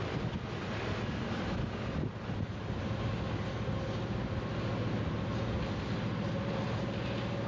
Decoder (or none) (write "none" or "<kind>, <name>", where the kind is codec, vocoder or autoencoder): none